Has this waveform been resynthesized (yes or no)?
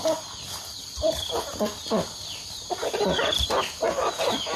no